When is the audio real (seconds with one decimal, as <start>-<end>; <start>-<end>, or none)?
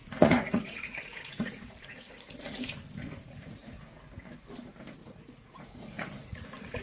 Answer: 2.6-3.2; 4.0-5.0